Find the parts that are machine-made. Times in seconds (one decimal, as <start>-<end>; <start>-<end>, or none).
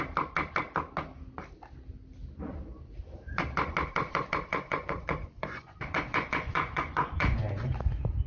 4.5-7.4